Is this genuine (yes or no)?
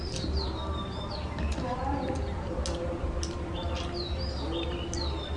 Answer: yes